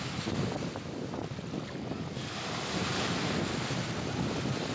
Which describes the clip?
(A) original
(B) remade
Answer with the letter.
A